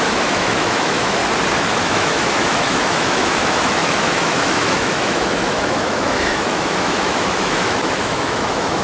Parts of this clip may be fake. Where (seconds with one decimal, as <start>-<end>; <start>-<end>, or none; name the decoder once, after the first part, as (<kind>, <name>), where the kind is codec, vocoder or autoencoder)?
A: 0.0-1.2 (autoencoder, DAC-VAE); 1.8-8.8